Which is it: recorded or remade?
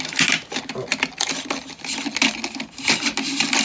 recorded